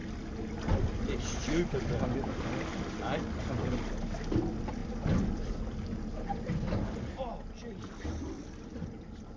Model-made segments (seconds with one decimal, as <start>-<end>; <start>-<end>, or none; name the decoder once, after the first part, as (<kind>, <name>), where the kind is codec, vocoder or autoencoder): none